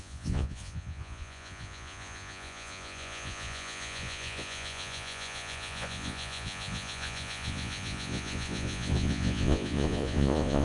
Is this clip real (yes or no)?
no